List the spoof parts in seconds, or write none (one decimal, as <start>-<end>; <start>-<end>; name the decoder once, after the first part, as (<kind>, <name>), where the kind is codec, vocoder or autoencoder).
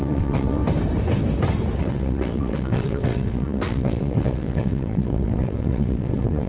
0.0-0.6 (vocoder, WaveNeXt); 1.8-6.5